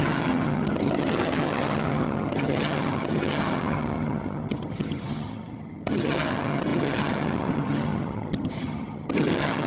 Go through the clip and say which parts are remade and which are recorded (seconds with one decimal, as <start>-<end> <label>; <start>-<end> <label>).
0.0-9.7 remade